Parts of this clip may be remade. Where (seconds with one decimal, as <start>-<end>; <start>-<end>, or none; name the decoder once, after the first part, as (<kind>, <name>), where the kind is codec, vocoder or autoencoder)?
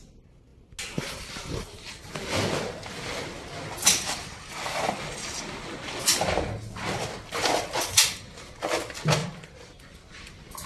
9.2-9.8 (vocoder, BigVGAN v2)